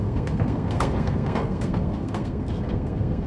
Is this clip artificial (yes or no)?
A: yes